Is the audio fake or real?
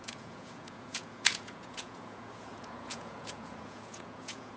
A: fake